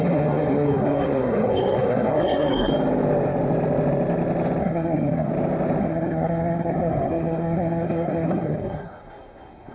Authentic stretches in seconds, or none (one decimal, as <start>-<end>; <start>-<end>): 2.7-4.6; 5.3-5.8